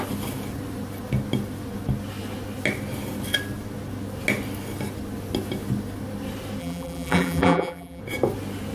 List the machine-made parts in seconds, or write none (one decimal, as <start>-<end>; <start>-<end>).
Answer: 6.6-8.0